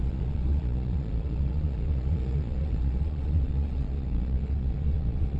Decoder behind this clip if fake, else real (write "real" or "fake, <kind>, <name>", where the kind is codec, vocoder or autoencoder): fake, vocoder, Vocos